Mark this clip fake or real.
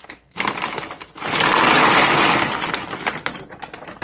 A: real